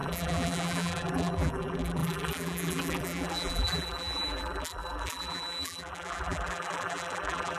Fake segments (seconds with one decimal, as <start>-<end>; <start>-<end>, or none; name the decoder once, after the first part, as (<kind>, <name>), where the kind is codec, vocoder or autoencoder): 0.0-7.6 (vocoder, BigVGAN v2)